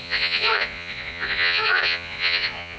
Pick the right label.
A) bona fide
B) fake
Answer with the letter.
B